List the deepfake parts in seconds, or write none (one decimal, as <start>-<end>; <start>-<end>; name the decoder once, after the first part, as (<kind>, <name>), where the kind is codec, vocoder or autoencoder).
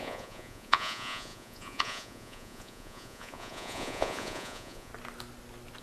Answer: 0.0-4.9 (vocoder, Vocos)